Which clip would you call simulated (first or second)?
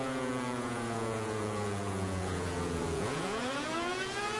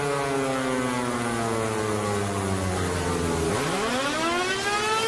first